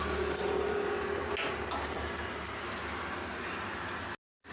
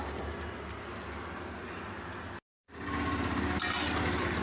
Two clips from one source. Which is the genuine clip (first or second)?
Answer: first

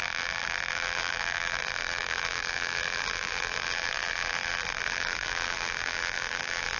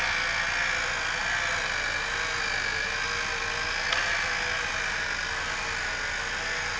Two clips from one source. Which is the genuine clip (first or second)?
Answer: second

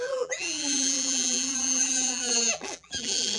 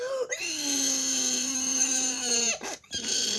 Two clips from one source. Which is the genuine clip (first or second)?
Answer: second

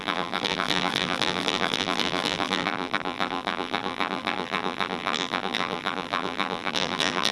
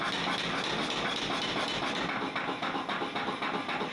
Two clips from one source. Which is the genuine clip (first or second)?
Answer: second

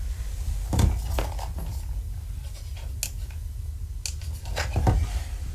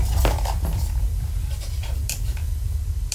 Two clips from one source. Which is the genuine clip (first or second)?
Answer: first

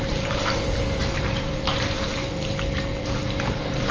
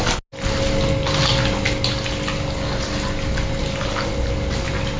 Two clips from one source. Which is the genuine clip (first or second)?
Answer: second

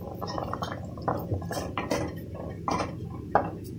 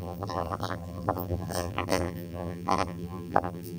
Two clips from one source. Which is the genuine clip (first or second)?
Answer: first